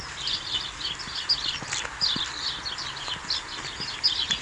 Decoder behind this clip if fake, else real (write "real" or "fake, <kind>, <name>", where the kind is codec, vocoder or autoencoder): real